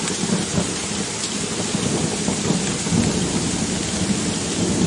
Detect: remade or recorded recorded